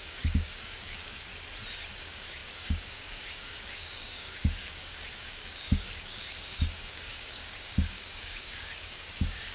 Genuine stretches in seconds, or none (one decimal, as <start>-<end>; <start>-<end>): 1.3-2.0